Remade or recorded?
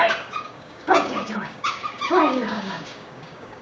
remade